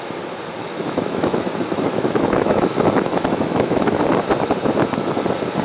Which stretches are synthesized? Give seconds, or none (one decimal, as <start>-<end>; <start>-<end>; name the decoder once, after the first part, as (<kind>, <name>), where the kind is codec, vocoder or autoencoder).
0.6-4.0 (autoencoder, DAC-VAE)